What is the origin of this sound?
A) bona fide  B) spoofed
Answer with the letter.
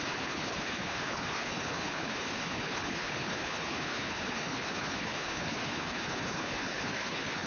B